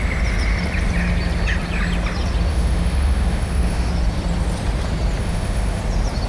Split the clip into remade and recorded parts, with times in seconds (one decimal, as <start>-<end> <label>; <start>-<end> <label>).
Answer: 0.0-2.5 recorded; 2.5-3.9 remade; 3.9-5.2 recorded; 5.2-5.8 remade; 5.8-6.3 recorded